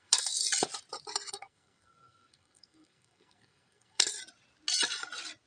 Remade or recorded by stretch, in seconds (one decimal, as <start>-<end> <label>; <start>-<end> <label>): 0.0-0.4 remade; 0.4-1.3 recorded; 1.3-4.1 remade; 4.1-5.5 recorded